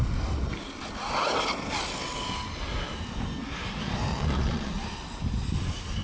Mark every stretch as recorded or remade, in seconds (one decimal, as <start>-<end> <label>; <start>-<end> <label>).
0.0-4.1 recorded; 4.1-4.7 remade; 4.7-6.0 recorded